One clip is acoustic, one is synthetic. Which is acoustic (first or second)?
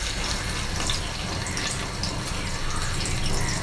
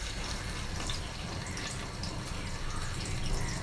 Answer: first